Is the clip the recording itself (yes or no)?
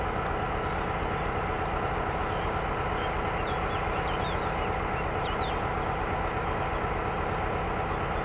yes